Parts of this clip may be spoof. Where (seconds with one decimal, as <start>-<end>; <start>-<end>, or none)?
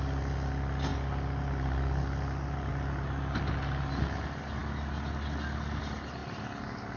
none